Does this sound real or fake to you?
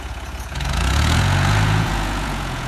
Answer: fake